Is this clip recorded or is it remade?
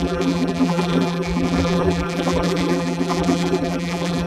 remade